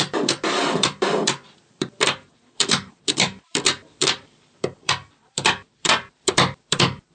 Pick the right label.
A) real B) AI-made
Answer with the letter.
B